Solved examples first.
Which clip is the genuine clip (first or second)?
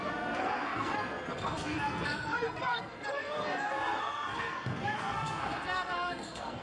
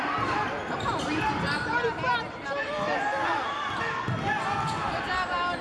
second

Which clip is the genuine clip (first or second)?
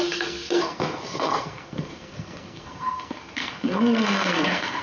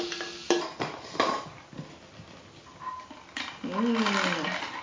second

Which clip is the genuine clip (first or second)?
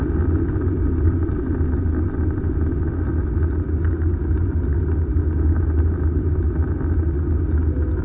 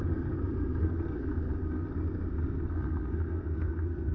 first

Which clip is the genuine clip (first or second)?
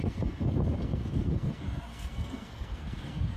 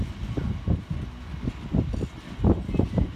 second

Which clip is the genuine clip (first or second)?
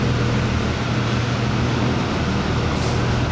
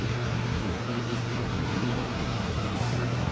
first